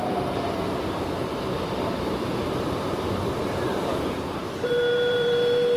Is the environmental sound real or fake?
fake